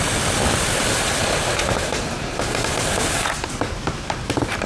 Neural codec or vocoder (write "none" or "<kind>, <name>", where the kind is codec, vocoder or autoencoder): vocoder, BigVGAN v2